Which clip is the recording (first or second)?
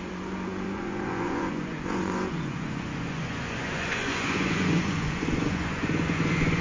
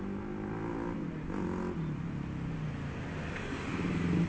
second